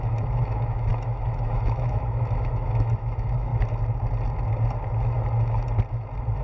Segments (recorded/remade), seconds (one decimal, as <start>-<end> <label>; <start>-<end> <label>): 0.0-3.5 remade; 3.5-6.4 recorded